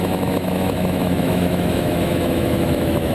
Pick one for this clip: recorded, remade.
remade